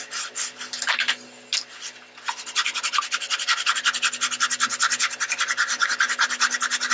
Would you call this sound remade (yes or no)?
no